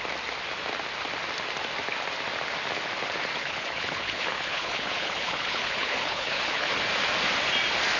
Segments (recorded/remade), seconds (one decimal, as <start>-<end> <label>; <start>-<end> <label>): 0.0-3.4 recorded; 3.4-6.7 remade; 6.7-8.0 recorded